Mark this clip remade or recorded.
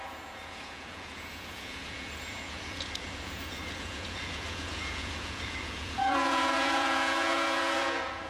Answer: remade